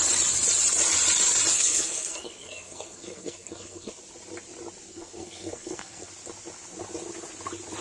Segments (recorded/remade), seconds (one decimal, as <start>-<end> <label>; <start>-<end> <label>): 0.0-1.5 recorded; 1.5-3.9 remade; 3.9-4.9 recorded; 4.9-6.1 remade; 6.1-7.8 recorded

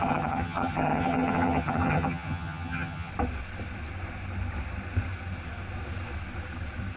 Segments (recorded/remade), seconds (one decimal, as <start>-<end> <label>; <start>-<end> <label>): 0.0-3.1 remade; 3.1-7.0 recorded

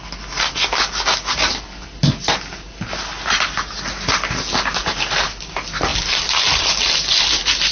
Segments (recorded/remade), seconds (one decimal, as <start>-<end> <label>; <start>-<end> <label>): 0.0-4.8 recorded; 4.8-5.5 remade; 5.5-5.9 recorded; 5.9-7.7 remade

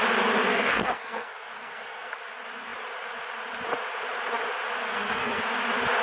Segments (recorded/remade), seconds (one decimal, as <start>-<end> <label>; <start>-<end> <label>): 0.0-0.5 recorded; 0.5-2.1 remade; 2.1-4.9 recorded; 4.9-5.4 remade; 5.4-6.0 recorded

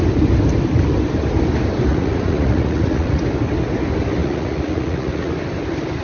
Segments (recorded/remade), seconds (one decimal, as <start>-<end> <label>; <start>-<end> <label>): 0.0-1.9 recorded; 1.9-3.2 remade; 3.2-4.2 recorded; 4.2-5.3 remade; 5.3-6.0 recorded

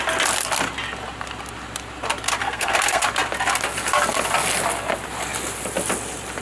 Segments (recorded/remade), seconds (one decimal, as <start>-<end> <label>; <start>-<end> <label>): 0.0-2.4 recorded; 2.4-3.0 remade; 3.0-6.4 recorded

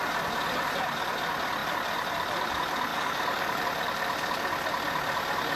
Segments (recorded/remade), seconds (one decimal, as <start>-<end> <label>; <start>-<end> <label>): 0.0-2.9 recorded; 2.9-3.6 remade; 3.6-5.6 recorded